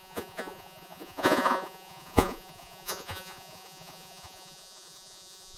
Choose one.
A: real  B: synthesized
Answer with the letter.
B